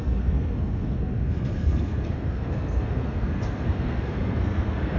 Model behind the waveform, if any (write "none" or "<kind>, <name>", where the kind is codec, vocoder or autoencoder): codec, SNAC